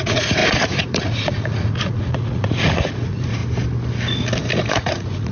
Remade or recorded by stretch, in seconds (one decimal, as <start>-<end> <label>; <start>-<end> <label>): 0.0-3.4 remade; 3.4-4.7 recorded; 4.7-5.3 remade

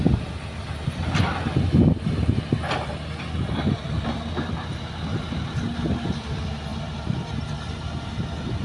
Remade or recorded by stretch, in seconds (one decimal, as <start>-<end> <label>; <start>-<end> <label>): 0.0-8.6 recorded

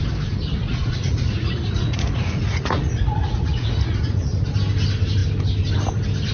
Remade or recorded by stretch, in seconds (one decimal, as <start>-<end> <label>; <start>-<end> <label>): 0.0-0.6 recorded; 0.6-4.4 remade; 4.4-6.3 recorded

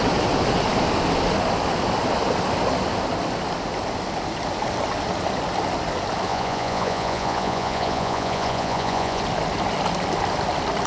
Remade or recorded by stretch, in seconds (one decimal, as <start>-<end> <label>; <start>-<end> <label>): 0.0-6.3 recorded; 6.3-9.2 remade; 9.2-10.9 recorded

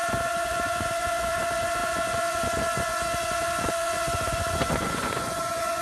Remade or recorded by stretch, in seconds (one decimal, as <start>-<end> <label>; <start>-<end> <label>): 0.0-5.8 remade